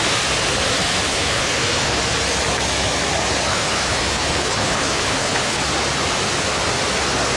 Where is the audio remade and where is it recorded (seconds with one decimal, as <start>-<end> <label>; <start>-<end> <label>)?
0.0-1.1 recorded; 1.1-2.0 remade; 2.0-3.5 recorded; 3.5-5.6 remade; 5.6-7.4 recorded